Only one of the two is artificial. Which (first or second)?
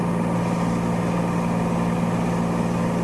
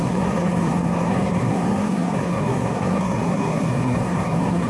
second